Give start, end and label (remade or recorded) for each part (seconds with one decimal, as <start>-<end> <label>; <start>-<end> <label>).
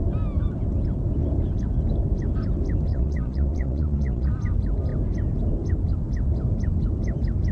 0.0-2.9 recorded; 2.9-4.3 remade; 4.3-7.5 recorded